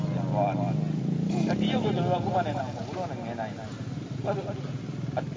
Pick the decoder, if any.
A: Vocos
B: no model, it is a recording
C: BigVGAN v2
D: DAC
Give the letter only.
B